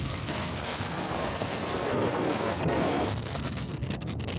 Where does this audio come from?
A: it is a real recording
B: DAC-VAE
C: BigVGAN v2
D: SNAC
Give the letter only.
D